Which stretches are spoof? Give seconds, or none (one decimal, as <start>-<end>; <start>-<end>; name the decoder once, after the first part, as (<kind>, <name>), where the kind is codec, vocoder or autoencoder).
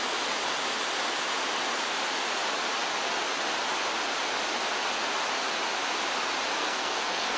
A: 6.5-7.4 (codec, SNAC)